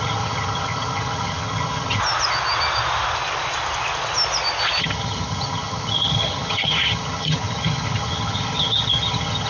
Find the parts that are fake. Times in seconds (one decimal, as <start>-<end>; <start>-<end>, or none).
0.0-2.0; 4.8-9.5